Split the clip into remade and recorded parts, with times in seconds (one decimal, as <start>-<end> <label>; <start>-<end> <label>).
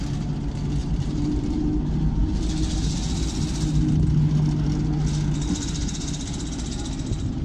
0.0-0.8 recorded; 0.8-1.7 remade; 1.7-7.4 recorded